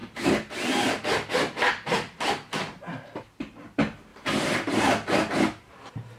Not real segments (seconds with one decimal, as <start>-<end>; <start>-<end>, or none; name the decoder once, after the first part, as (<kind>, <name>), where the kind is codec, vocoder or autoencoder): 4.1-4.9 (vocoder, BigVGAN v2)